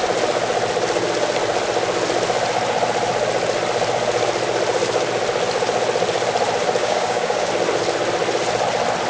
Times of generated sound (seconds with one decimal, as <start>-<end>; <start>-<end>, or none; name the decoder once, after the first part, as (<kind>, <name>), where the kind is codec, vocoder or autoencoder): 6.8-7.5 (codec, DAC)